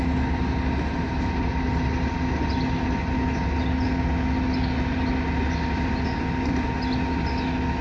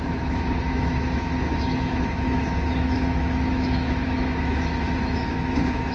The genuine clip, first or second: first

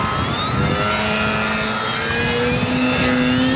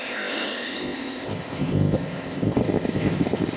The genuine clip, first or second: first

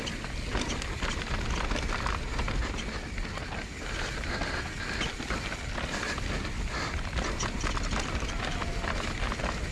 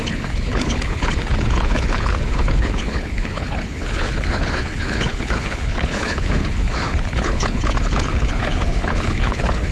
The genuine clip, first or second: first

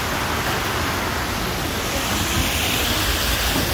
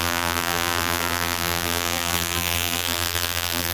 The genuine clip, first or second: first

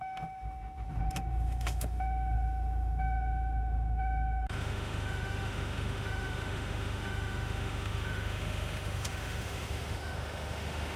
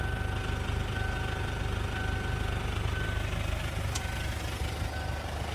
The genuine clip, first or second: second